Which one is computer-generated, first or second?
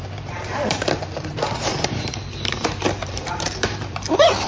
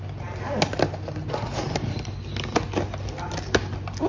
first